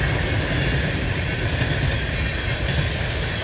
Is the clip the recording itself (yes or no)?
yes